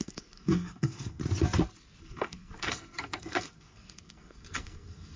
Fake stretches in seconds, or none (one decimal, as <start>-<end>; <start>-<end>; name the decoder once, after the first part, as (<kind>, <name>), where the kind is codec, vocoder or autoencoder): 0.0-1.2 (codec, SNAC); 2.0-5.2